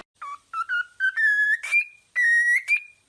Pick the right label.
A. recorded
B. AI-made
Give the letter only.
A